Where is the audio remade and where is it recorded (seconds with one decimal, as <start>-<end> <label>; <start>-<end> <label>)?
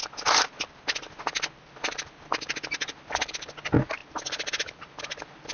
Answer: 0.0-5.5 recorded